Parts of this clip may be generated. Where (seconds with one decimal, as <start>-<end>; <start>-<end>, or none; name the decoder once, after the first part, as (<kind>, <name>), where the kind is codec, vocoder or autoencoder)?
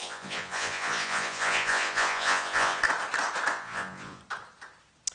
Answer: 0.0-2.8 (vocoder, Vocos); 3.5-4.2